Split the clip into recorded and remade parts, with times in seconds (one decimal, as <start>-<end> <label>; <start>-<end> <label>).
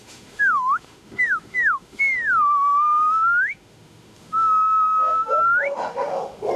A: 0.0-6.6 remade